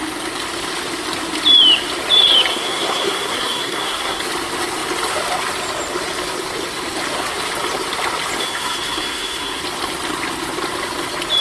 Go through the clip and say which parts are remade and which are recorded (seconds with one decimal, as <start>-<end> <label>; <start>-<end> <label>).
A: 0.0-2.5 recorded; 2.5-4.2 remade; 4.2-8.4 recorded; 8.4-9.6 remade; 9.6-11.4 recorded